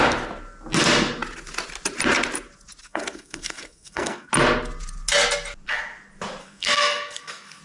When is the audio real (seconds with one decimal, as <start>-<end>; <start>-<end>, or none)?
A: 0.0-2.8; 4.3-6.4